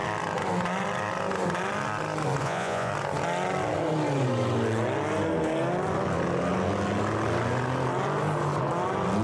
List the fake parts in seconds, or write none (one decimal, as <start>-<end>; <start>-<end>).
2.4-2.9